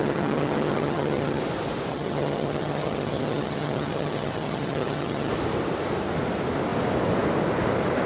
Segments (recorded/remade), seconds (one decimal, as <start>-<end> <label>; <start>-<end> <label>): 0.0-1.4 remade; 1.4-1.9 recorded; 1.9-5.3 remade; 5.3-8.1 recorded

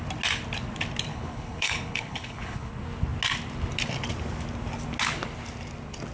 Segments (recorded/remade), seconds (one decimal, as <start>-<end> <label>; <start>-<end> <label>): 0.0-1.1 recorded; 1.1-2.7 remade; 2.7-6.1 recorded

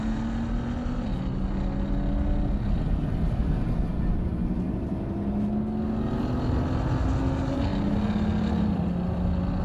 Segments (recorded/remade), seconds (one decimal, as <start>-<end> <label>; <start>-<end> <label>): 0.0-9.6 recorded

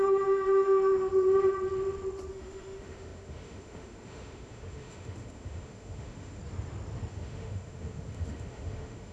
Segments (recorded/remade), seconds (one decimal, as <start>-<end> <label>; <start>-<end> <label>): 0.0-1.1 remade; 1.1-2.3 recorded; 2.3-6.4 remade; 6.4-7.1 recorded; 7.1-9.1 remade